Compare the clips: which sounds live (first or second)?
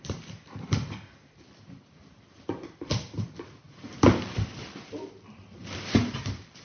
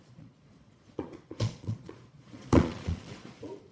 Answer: first